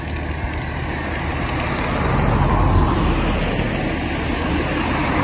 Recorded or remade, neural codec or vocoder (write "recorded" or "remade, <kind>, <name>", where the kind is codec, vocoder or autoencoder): recorded